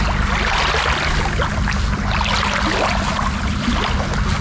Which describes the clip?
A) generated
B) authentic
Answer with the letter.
B